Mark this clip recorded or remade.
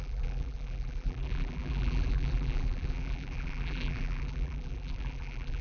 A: remade